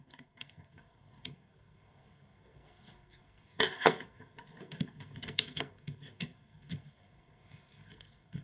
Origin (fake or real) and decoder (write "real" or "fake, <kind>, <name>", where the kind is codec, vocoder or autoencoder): fake, codec, SNAC